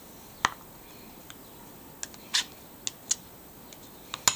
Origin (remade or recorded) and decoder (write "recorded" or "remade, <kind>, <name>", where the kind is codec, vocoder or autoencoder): recorded